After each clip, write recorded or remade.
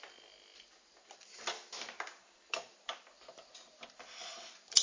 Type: recorded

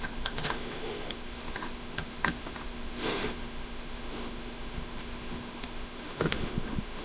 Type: remade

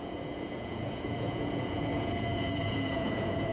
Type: remade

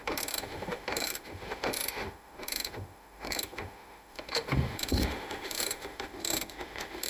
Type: remade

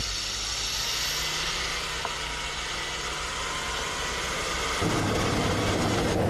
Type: recorded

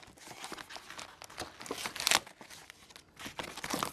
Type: recorded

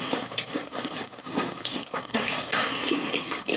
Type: remade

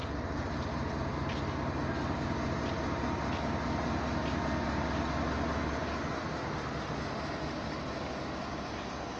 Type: recorded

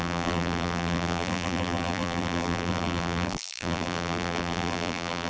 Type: remade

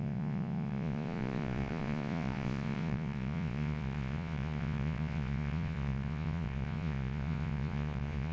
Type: remade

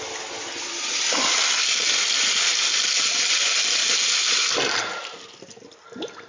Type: recorded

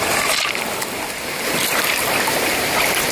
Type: remade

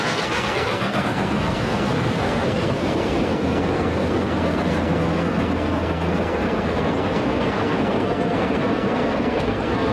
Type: remade